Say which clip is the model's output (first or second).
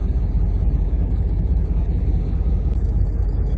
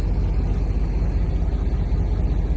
first